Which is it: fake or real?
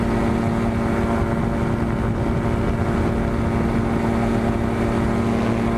real